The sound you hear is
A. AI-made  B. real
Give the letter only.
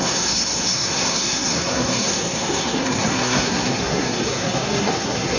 A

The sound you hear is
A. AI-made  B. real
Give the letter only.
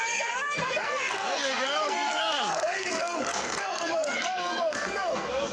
A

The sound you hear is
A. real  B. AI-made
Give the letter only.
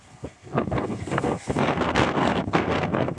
B